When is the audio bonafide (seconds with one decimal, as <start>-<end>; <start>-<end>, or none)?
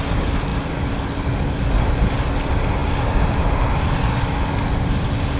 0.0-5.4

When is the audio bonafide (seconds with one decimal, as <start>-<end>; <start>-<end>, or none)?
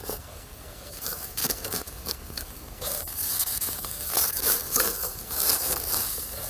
none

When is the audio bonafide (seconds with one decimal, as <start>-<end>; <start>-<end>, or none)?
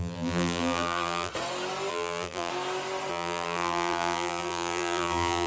1.3-1.9; 2.5-3.1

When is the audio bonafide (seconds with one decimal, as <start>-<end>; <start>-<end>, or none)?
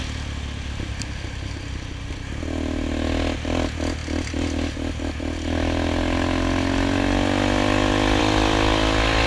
0.0-9.3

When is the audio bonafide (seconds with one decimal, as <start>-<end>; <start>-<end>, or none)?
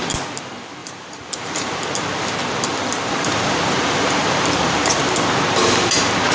0.0-0.8; 1.8-2.7; 5.0-6.3